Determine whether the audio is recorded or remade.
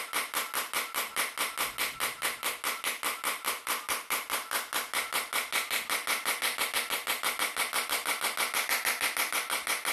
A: recorded